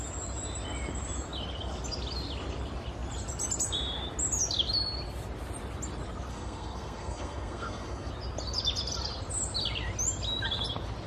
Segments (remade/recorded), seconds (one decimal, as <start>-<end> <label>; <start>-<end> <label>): 0.0-6.3 recorded; 6.3-8.1 remade; 8.1-11.1 recorded